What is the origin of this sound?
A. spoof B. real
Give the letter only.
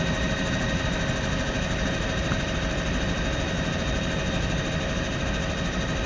B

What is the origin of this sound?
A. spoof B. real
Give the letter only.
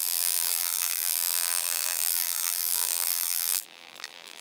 A